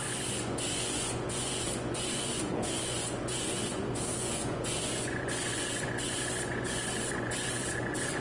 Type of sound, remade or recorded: remade